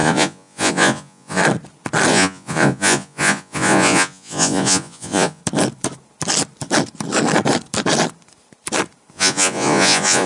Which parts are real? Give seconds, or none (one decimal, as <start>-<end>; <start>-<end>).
1.4-2.1; 5.4-9.1